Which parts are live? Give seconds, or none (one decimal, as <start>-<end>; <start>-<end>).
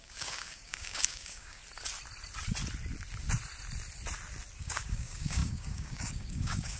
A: 1.6-4.6